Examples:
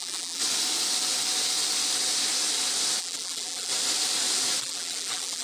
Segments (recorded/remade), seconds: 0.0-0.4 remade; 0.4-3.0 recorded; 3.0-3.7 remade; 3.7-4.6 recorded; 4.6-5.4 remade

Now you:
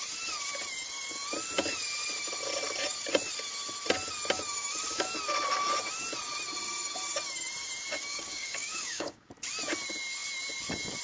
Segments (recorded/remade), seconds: 0.0-8.1 recorded; 8.1-9.3 remade; 9.3-11.0 recorded

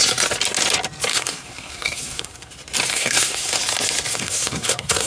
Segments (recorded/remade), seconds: 0.0-1.1 recorded; 1.1-2.5 remade; 2.5-2.9 recorded; 2.9-3.6 remade; 3.6-4.1 recorded; 4.1-5.1 remade

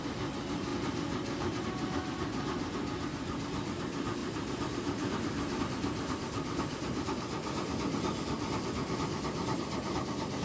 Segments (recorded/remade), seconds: 0.0-4.2 recorded; 4.2-5.6 remade; 5.6-10.4 recorded

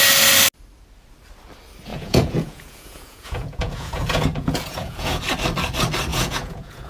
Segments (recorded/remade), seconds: 0.0-1.9 recorded; 1.9-5.2 remade; 5.2-6.1 recorded; 6.1-6.9 remade

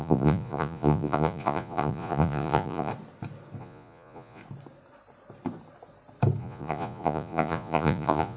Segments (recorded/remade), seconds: 0.0-2.9 remade; 2.9-3.6 recorded; 3.6-4.4 remade; 4.4-6.4 recorded; 6.4-8.4 remade

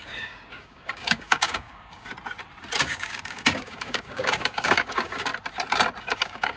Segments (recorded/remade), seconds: 0.0-2.1 remade; 2.1-2.8 recorded; 2.8-5.3 remade; 5.3-6.0 recorded; 6.0-6.6 remade